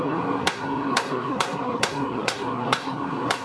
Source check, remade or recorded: remade